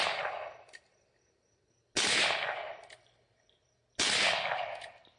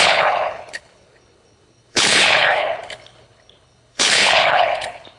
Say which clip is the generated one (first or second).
second